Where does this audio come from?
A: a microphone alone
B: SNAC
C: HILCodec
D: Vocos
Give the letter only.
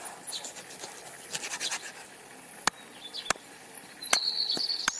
A